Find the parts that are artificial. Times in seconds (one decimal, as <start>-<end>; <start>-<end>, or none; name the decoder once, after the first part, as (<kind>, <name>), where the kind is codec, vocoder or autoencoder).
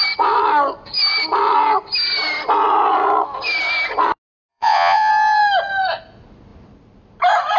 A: 4.5-5.1 (vocoder, Vocos)